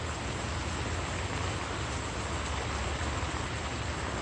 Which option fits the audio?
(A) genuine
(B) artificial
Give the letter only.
A